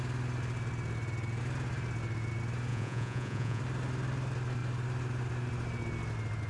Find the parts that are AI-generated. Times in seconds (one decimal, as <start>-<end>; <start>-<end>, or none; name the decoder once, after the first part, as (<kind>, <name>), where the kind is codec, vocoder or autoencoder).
2.7-3.6 (vocoder, Vocos)